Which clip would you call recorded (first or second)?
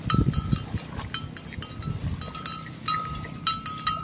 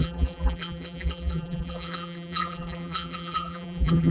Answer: first